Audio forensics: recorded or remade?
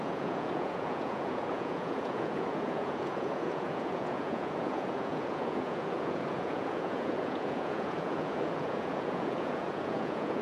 remade